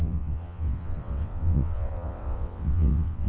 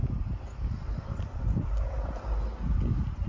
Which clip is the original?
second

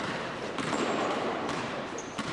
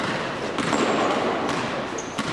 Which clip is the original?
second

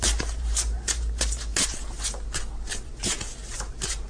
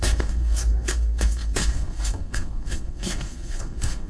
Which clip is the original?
first